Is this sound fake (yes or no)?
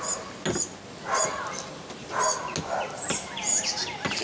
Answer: no